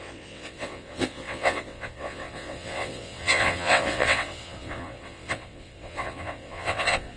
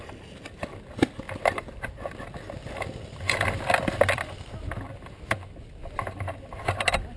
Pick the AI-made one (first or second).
first